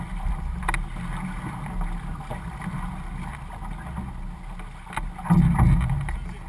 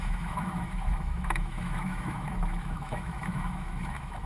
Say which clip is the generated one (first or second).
second